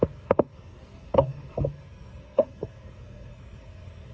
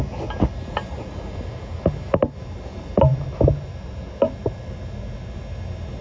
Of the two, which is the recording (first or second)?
second